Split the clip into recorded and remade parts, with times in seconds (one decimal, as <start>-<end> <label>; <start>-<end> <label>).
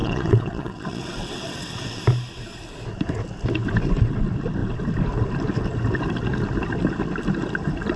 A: 0.0-2.0 remade; 2.0-8.0 recorded